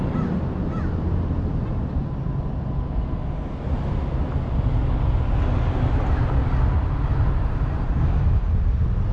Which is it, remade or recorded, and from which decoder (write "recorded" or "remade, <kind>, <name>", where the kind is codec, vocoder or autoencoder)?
recorded